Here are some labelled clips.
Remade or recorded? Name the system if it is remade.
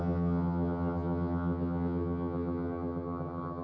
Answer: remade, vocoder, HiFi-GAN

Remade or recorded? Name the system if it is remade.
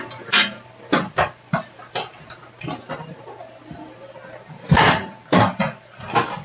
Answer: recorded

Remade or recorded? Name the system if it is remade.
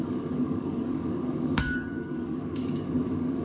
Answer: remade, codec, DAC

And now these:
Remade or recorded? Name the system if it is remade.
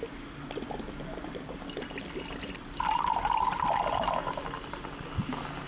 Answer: recorded